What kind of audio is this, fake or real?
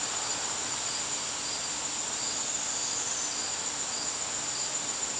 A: real